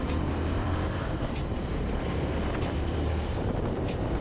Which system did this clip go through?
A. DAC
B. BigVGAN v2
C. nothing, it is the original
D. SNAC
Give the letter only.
B